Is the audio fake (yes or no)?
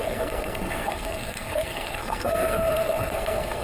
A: yes